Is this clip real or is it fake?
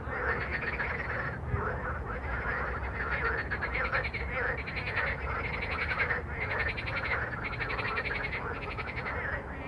real